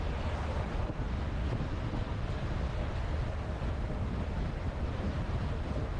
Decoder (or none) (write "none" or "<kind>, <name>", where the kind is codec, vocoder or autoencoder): vocoder, BigVGAN v2